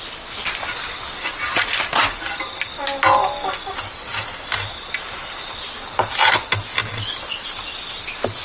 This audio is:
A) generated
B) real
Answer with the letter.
B